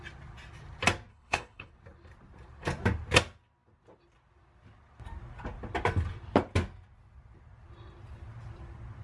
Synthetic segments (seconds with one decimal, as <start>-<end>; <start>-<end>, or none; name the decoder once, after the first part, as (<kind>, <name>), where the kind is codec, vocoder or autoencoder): 1.1-1.7 (codec, HILCodec)